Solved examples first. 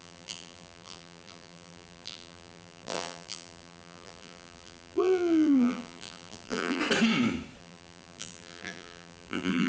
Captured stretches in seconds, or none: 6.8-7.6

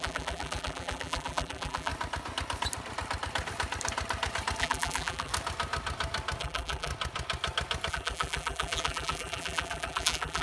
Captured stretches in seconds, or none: 1.9-4.6; 5.3-6.4; 6.9-7.9

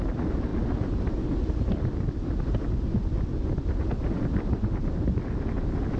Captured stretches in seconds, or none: 0.0-6.0

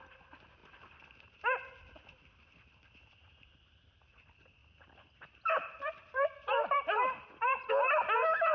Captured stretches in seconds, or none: 0.0-0.6; 4.0-4.6; 7.7-8.5

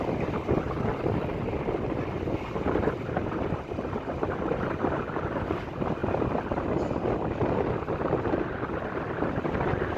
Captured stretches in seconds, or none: 0.9-2.6; 6.0-8.1

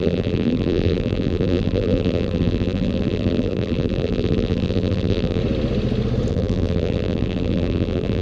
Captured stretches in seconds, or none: 5.4-6.3

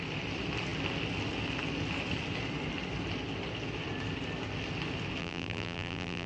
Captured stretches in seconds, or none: 0.0-5.2

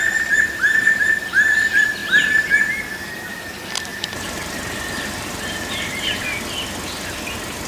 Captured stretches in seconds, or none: 0.0-3.9; 6.4-7.7